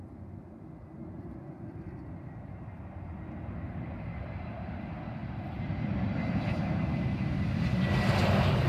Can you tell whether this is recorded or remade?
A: recorded